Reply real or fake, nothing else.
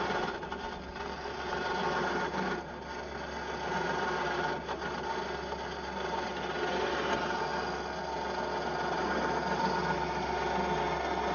real